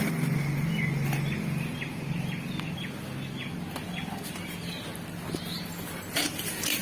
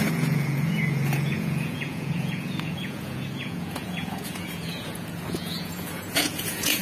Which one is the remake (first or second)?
second